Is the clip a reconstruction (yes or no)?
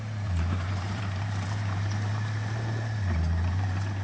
yes